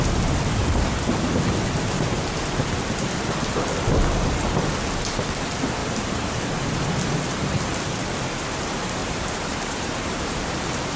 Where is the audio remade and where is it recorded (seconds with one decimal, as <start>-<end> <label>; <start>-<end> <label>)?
0.0-5.8 recorded; 5.8-6.4 remade; 6.4-9.0 recorded; 9.0-10.5 remade; 10.5-11.0 recorded